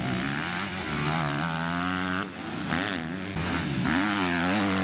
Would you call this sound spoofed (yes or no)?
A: no